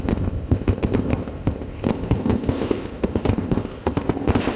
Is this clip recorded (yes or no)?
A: no